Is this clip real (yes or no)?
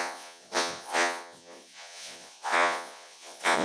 no